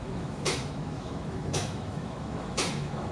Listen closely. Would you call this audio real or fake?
fake